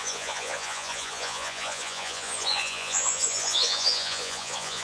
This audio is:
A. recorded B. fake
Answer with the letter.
B